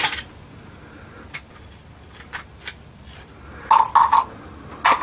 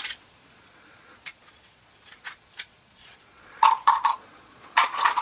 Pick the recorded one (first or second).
first